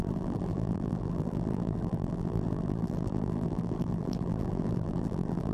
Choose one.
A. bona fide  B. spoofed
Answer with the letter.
B